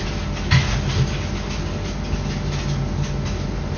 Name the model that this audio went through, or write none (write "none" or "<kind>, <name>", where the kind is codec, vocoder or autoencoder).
none